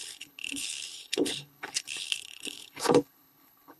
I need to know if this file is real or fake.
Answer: fake